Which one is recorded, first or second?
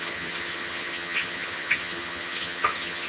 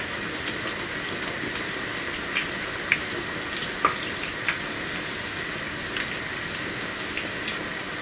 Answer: second